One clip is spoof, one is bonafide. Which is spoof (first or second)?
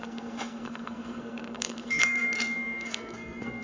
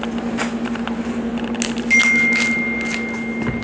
first